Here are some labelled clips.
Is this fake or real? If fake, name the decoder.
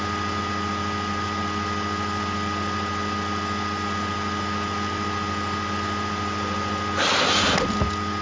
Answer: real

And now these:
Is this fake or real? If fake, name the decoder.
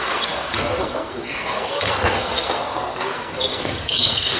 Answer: fake, codec, SNAC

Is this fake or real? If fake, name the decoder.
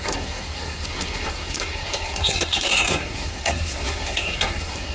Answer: fake, codec, SNAC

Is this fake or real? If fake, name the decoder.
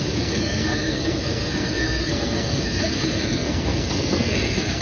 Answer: fake, codec, SNAC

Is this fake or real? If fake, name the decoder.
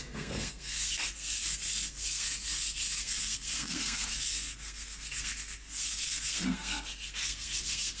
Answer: fake, codec, SNAC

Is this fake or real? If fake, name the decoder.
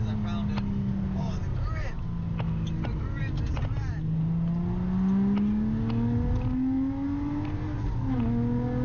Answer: real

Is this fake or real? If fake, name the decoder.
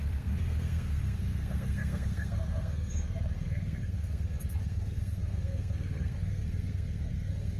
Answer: fake, codec, SNAC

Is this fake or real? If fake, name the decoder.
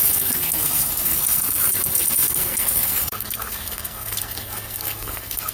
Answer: fake, codec, SNAC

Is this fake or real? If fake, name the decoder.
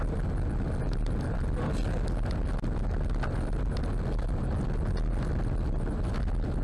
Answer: real